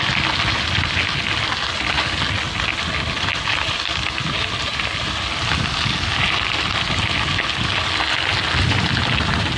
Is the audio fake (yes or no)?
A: no